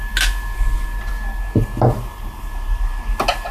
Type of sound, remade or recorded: recorded